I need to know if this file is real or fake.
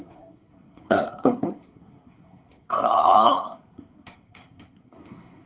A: fake